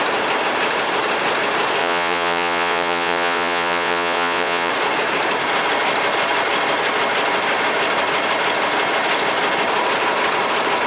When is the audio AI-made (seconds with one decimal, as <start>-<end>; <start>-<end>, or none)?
1.8-4.7